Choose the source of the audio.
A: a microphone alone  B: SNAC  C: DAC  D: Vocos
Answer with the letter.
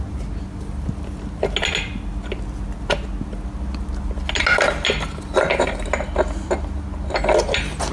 A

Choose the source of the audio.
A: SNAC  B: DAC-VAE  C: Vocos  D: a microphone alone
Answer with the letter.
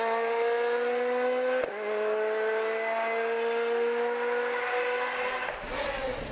D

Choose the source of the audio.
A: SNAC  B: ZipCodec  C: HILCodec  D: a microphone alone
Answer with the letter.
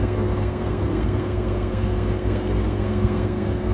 A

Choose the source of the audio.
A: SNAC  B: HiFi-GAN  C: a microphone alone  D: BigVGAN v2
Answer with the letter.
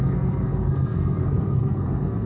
A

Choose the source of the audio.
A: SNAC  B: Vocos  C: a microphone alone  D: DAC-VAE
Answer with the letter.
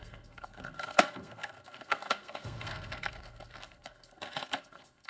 A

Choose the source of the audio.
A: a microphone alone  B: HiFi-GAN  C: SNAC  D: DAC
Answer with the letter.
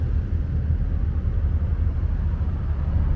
A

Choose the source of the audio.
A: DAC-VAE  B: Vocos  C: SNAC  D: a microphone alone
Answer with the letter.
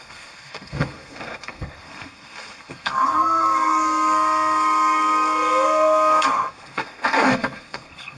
C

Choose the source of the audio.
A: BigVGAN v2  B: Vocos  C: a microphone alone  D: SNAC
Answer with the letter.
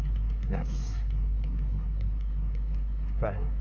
D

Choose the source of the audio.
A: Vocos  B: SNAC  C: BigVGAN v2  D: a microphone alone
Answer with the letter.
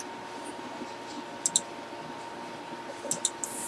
D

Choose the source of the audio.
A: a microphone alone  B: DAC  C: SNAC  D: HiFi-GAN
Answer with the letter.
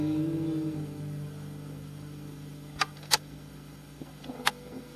C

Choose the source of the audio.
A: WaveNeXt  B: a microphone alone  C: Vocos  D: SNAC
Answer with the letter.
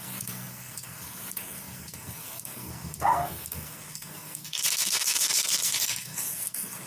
D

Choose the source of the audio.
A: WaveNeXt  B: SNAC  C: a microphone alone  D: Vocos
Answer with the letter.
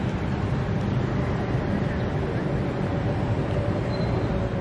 C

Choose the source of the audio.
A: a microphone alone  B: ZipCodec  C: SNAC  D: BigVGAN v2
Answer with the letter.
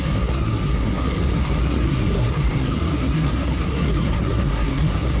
C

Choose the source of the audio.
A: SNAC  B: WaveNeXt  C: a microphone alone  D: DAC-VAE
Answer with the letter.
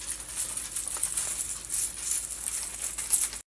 C